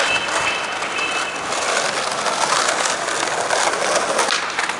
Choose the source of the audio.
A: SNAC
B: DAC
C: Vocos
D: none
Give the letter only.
D